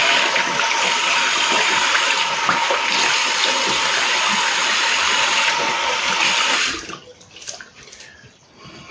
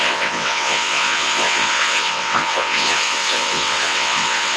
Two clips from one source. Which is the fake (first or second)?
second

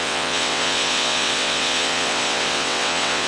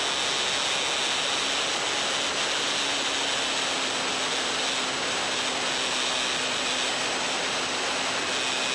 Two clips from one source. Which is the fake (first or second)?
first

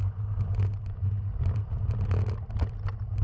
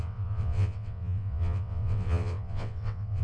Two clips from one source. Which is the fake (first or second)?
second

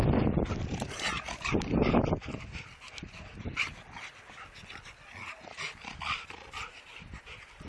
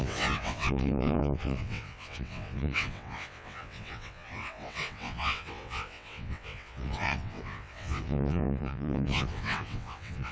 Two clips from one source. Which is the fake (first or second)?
second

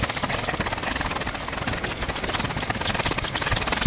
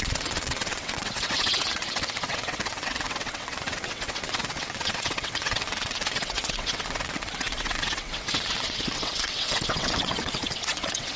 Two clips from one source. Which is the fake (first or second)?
second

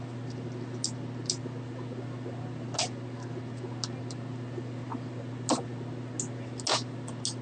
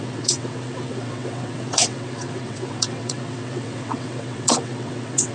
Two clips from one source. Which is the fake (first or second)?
second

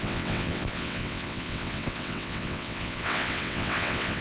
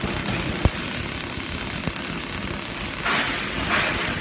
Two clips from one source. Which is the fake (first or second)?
first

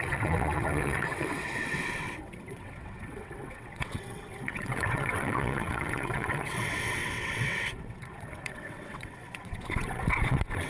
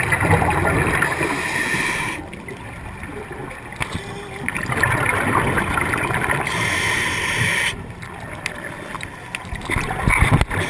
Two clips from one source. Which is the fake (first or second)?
first